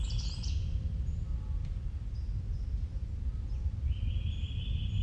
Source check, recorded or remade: recorded